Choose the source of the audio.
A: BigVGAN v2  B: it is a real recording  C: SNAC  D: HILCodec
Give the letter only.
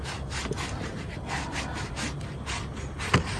B